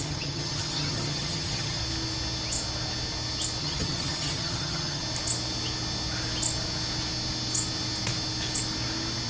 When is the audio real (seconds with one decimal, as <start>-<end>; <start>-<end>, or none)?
1.8-3.6; 5.0-9.3